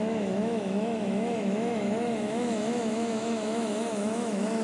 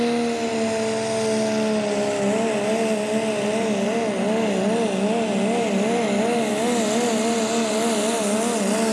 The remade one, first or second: first